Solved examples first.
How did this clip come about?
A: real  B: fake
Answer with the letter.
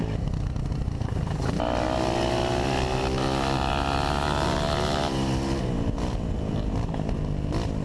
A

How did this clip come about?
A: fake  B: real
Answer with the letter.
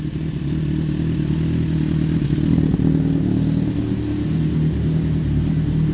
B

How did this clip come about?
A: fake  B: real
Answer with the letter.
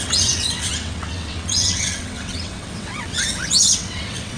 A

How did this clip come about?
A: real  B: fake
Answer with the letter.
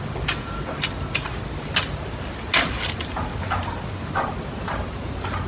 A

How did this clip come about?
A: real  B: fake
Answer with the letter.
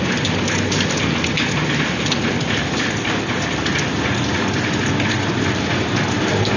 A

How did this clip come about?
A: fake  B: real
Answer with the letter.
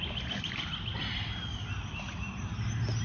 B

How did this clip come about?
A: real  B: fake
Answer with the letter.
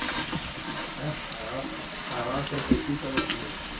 A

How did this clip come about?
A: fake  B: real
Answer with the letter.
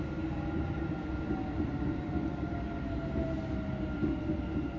B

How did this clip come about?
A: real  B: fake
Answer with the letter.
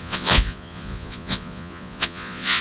B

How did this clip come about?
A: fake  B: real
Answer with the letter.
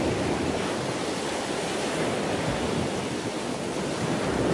B